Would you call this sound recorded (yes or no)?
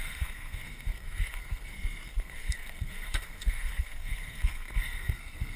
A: no